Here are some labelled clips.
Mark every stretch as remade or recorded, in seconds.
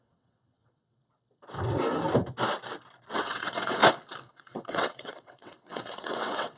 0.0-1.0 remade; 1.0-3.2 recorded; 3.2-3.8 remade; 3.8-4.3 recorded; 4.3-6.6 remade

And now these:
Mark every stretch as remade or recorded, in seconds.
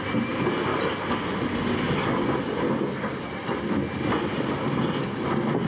0.0-5.7 recorded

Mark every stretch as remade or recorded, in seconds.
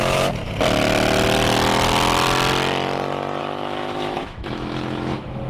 0.0-0.4 remade; 0.4-3.4 recorded; 3.4-5.5 remade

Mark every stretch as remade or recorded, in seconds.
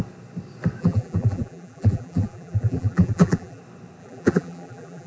0.0-0.8 recorded; 0.8-3.6 remade; 3.6-4.0 recorded; 4.0-5.1 remade